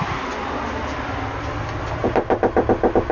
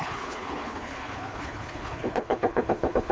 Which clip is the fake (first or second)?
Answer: second